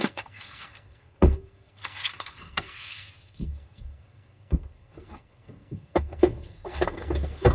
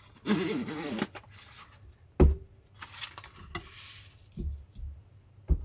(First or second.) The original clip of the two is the second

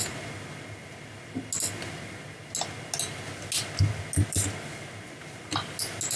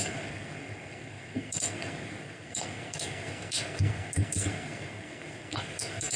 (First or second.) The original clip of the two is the first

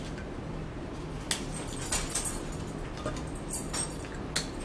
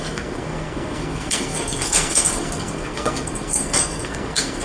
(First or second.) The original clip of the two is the first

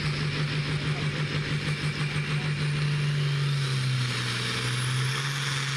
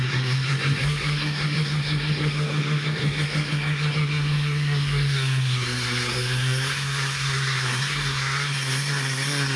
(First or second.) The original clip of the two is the first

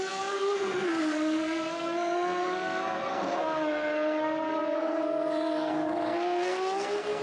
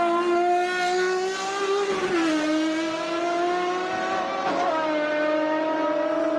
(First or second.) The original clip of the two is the second